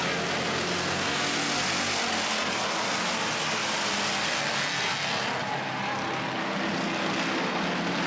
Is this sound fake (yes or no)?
no